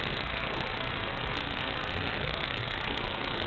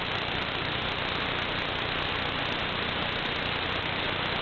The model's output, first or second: first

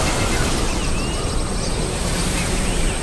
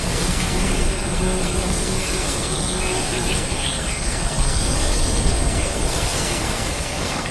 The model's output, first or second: second